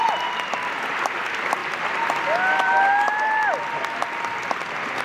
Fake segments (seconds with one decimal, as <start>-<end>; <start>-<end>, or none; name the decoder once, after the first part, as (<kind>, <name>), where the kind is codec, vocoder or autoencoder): none